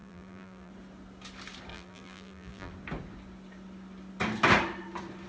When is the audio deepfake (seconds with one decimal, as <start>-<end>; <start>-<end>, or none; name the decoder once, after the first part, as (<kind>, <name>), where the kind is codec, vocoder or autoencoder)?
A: 0.0-0.7 (vocoder, BigVGAN v2); 1.7-2.7